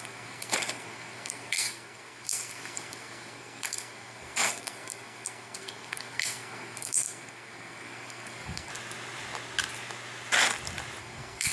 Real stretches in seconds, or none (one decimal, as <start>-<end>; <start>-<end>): 8.7-11.0